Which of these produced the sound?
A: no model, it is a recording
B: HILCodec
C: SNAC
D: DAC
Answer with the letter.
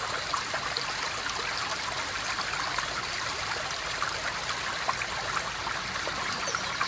A